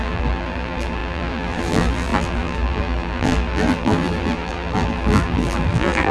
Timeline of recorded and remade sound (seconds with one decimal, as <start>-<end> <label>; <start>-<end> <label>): 0.0-6.1 remade